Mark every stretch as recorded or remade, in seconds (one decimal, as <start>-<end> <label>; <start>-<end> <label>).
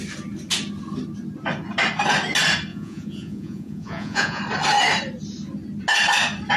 0.0-2.7 recorded; 2.7-4.4 remade; 4.4-6.6 recorded